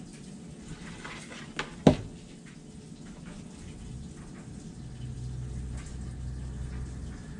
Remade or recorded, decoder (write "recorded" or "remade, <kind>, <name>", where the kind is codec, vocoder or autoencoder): recorded